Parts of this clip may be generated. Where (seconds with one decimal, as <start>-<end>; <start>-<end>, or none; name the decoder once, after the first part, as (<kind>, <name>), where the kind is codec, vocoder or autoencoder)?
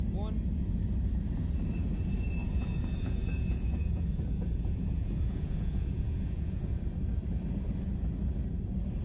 2.4-6.8 (vocoder, Vocos)